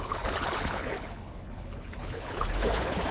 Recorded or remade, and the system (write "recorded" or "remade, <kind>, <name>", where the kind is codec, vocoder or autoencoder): remade, codec, HILCodec